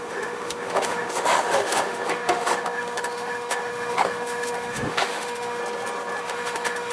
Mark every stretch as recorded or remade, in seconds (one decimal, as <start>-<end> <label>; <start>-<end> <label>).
0.0-5.6 remade; 5.6-6.2 recorded; 6.2-6.9 remade